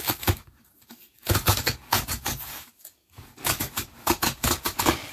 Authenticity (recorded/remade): remade